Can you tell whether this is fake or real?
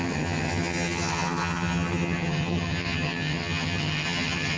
fake